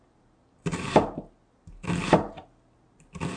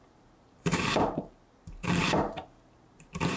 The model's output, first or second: second